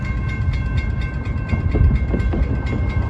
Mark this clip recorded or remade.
recorded